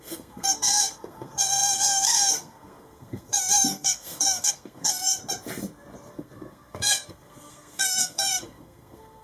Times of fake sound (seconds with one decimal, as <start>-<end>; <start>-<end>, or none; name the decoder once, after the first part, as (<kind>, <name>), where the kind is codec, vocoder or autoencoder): 0.0-5.2 (codec, SNAC); 6.1-9.2